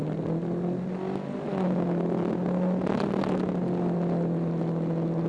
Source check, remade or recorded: recorded